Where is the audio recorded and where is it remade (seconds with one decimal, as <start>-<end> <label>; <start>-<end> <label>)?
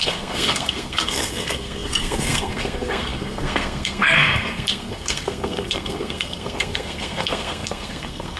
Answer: 0.0-8.4 remade